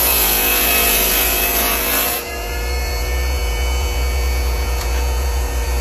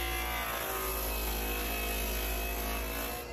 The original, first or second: second